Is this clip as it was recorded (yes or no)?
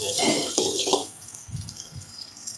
no